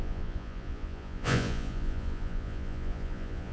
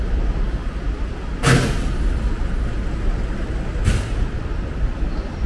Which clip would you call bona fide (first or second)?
second